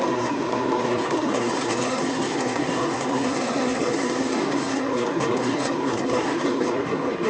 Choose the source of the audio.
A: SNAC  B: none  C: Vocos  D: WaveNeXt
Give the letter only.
A